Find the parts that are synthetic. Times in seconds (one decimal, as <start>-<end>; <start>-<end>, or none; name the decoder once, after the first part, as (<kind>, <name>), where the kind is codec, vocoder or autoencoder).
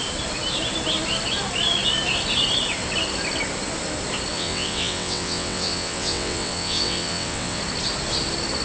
4.3-7.6 (vocoder, WaveNeXt)